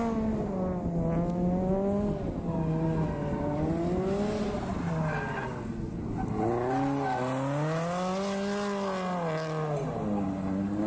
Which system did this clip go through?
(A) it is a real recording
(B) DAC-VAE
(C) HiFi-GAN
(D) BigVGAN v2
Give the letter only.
A